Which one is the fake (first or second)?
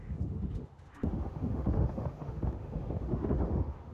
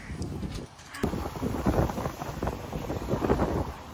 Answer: first